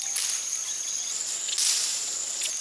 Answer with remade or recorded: recorded